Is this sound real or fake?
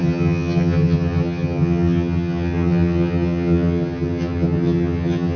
fake